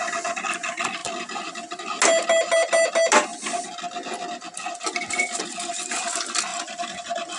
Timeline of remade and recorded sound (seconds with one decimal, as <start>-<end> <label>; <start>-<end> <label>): 0.0-6.5 recorded; 6.5-7.4 remade